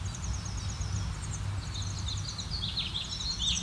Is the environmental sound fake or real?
real